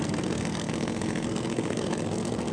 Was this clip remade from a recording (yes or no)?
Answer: yes